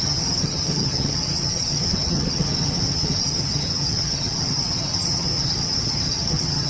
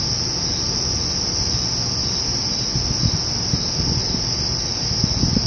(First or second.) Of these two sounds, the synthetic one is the first